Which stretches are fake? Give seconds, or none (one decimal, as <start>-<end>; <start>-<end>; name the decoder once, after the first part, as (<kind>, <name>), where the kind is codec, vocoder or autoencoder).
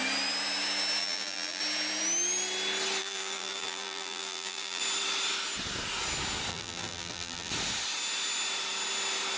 1.0-1.6 (vocoder, BigVGAN v2); 3.0-4.8; 6.5-7.5